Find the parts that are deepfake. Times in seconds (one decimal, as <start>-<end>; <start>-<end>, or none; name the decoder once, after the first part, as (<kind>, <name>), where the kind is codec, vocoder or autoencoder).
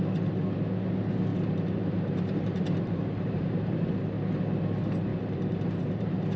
1.3-3.9 (vocoder, BigVGAN v2); 5.1-6.4